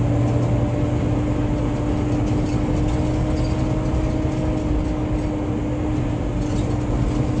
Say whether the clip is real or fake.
real